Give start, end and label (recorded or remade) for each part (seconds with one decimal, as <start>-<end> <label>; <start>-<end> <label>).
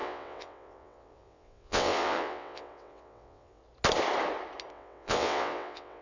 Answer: 0.0-3.6 remade; 3.6-4.7 recorded; 4.7-6.0 remade